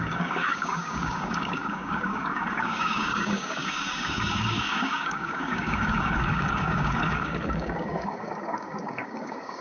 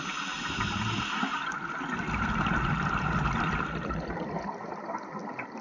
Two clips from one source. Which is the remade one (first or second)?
first